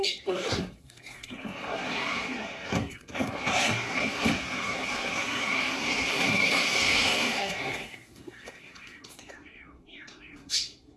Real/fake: fake